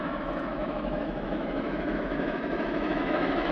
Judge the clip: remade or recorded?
remade